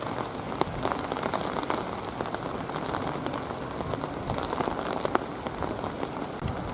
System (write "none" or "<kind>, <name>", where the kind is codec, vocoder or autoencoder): none